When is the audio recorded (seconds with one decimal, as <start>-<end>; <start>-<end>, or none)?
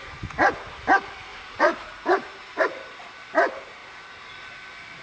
0.0-1.3; 2.6-5.0